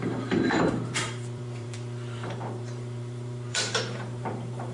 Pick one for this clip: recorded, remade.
remade